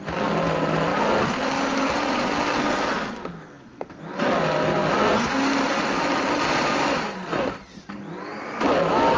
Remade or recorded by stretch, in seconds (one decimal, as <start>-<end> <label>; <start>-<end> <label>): 0.0-3.3 recorded; 3.3-4.0 remade; 4.0-9.2 recorded